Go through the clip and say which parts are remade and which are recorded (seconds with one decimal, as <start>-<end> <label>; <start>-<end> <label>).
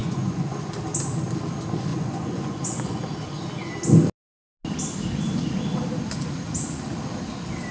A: 0.0-0.7 remade; 0.7-1.9 recorded; 1.9-3.0 remade; 3.0-7.7 recorded